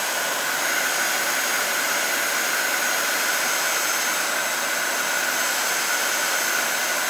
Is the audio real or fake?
real